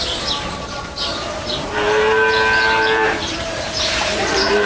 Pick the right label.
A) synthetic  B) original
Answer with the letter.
A